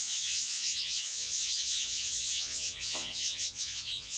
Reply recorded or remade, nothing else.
remade